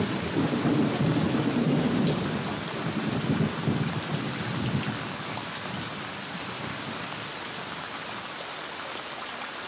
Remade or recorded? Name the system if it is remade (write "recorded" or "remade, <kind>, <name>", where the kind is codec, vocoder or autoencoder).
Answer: recorded